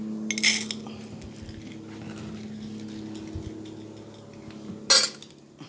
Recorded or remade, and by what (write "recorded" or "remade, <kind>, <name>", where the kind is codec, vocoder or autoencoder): recorded